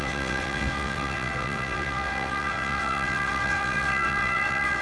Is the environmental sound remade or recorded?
remade